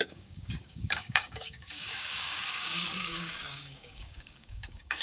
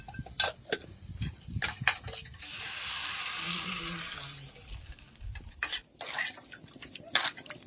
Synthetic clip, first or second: first